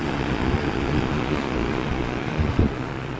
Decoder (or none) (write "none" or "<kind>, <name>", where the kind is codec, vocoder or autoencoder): vocoder, Vocos